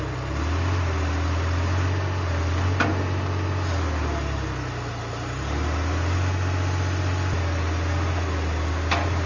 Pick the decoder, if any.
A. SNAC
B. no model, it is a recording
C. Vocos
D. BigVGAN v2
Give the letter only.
B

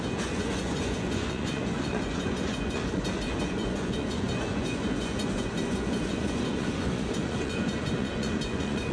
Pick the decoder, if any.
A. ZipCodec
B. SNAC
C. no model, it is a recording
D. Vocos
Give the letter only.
D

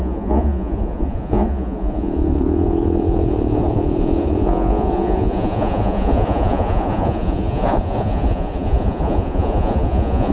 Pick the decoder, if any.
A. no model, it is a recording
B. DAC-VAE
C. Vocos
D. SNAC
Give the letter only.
C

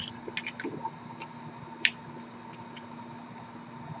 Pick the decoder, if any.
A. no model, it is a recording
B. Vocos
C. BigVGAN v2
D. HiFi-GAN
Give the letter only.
A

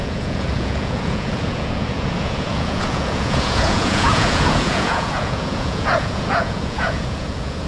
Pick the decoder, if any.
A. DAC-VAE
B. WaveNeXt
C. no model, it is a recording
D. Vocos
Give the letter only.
D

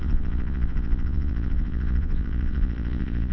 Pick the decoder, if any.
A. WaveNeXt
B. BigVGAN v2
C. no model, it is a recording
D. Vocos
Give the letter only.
D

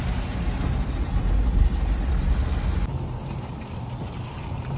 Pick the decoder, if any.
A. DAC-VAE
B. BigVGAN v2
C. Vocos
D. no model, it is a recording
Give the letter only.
D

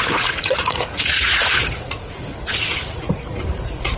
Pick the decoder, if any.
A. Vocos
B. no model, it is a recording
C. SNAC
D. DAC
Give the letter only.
A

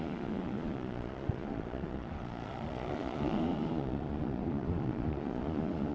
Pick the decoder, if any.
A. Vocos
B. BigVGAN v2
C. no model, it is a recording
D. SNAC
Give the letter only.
A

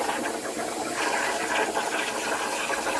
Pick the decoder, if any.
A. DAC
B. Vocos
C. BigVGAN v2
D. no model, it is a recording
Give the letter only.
D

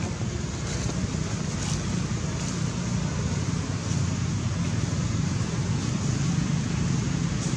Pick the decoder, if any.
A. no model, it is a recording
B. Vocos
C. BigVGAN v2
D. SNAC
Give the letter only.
A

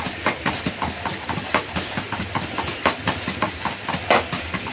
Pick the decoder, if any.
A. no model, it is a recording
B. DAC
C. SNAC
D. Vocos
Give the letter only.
A